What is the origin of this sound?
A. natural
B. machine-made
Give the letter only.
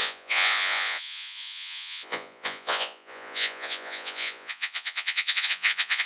B